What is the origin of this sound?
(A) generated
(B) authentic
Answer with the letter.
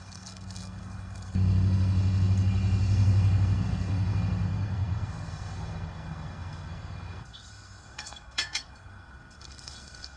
A